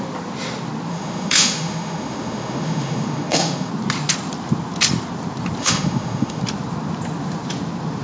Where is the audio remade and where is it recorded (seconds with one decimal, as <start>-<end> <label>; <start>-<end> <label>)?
0.0-0.9 recorded; 0.9-3.7 remade; 3.7-5.6 recorded; 5.6-6.4 remade; 6.4-8.0 recorded